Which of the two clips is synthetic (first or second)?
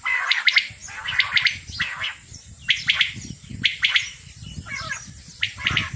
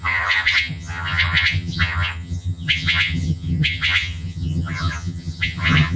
second